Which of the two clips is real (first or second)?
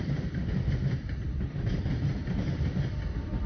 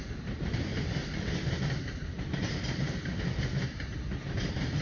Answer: second